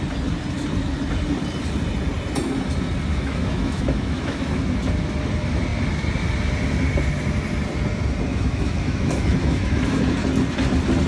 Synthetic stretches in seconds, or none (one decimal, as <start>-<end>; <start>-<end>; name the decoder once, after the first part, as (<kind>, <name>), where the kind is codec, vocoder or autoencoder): 3.1-4.6 (autoencoder, DAC-VAE); 8.3-10.0